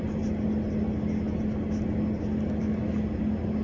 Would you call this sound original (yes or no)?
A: yes